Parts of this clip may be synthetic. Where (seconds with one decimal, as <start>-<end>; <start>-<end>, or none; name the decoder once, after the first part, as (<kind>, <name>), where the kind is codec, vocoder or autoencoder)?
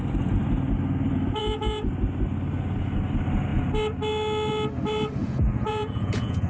1.4-1.9 (vocoder, Vocos); 5.2-6.5